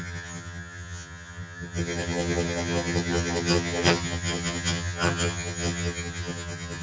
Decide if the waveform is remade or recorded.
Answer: remade